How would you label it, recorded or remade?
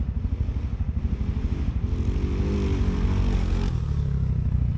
recorded